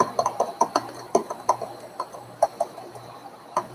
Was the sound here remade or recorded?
remade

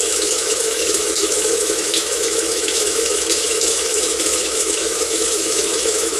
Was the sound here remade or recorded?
remade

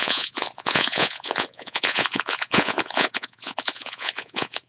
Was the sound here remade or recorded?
remade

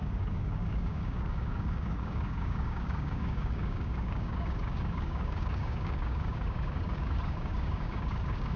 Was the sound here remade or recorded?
remade